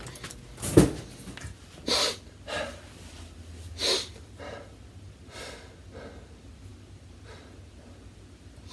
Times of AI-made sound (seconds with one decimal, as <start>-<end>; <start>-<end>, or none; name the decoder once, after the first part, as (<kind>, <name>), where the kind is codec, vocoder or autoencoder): none